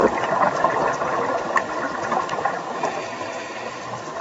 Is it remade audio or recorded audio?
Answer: recorded